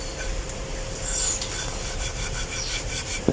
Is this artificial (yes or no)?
no